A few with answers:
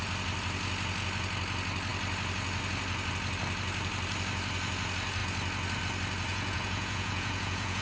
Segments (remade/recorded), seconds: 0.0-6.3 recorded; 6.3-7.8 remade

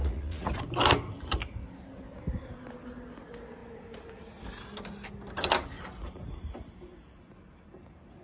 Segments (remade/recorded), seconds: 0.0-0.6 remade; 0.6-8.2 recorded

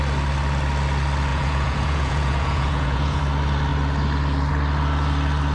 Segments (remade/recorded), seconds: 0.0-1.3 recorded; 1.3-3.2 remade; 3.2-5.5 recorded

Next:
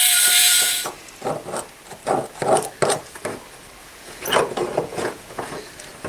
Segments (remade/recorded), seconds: 0.0-0.4 recorded; 0.4-1.1 remade; 1.1-3.8 recorded; 3.8-4.4 remade; 4.4-4.9 recorded; 4.9-5.5 remade; 5.5-6.1 recorded